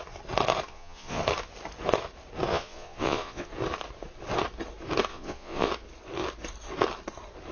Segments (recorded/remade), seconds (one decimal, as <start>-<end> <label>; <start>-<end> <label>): 0.0-0.7 recorded; 0.7-1.2 remade; 1.2-2.5 recorded; 2.5-3.5 remade; 3.5-5.1 recorded; 5.1-5.7 remade; 5.7-7.5 recorded